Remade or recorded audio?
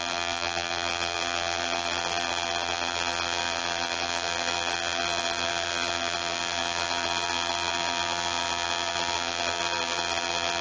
remade